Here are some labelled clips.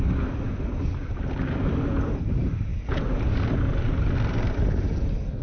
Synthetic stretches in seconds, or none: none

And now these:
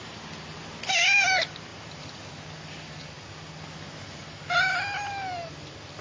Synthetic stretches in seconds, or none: none

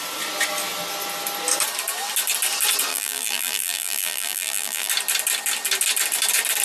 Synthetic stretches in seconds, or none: 2.9-4.9